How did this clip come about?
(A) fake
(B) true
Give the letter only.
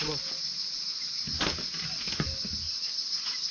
B